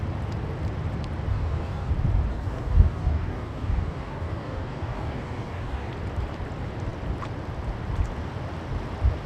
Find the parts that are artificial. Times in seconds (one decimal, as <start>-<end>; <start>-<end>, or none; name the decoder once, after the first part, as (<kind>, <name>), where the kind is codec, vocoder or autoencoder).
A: 1.3-1.9 (codec, DAC); 2.3-5.9